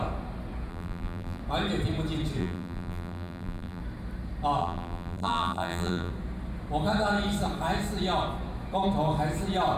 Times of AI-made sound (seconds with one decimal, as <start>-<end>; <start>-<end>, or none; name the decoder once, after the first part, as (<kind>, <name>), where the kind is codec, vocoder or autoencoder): 0.7-1.4 (vocoder, BigVGAN v2); 2.4-3.8; 4.6-6.1